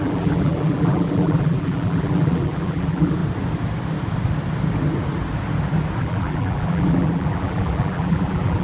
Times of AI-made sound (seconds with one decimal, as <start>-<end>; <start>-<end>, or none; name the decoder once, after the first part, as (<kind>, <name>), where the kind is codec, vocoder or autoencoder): 0.0-3.2 (vocoder, BigVGAN v2); 6.0-8.6